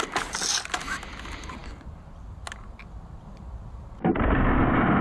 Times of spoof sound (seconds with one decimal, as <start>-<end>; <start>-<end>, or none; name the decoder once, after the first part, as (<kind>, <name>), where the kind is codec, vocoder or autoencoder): none